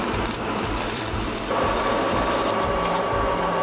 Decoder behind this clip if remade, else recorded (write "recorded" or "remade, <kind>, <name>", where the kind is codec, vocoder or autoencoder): remade, vocoder, BigVGAN v2